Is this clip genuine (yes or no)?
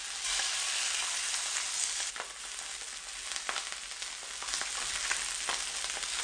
yes